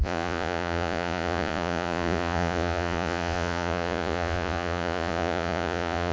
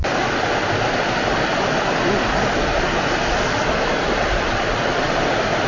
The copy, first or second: first